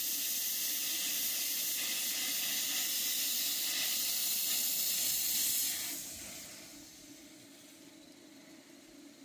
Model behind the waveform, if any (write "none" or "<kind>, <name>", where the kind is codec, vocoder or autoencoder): none